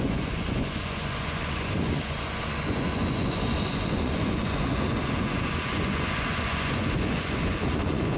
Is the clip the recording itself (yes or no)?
no